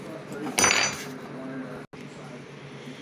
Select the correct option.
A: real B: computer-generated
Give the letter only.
A